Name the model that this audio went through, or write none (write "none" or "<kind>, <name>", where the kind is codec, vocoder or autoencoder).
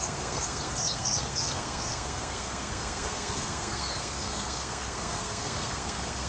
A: codec, SNAC